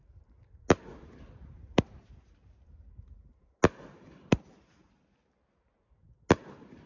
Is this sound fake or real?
real